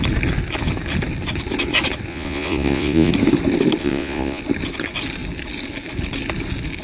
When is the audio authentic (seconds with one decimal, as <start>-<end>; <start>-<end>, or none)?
0.0-2.1; 3.1-3.8; 4.4-6.8